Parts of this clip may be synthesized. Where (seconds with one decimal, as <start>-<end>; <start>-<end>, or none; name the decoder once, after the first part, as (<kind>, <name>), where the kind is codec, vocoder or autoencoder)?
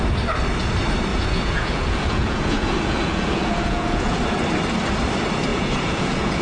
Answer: 1.1-4.2 (vocoder, Vocos); 5.5-6.4